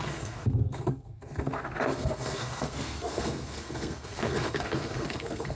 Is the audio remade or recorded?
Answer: remade